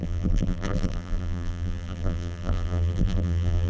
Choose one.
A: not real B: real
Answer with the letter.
A